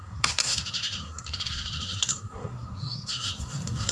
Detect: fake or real fake